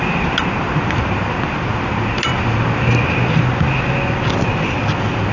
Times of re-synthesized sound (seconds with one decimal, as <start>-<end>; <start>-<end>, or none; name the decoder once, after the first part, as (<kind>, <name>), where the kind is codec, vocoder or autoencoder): none